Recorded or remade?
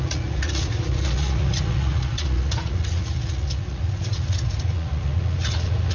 remade